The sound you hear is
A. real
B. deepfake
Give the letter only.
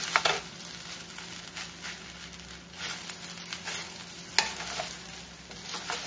A